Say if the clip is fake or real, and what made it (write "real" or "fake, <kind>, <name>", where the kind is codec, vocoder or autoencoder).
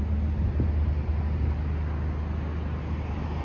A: real